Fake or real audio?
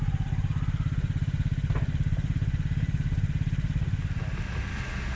real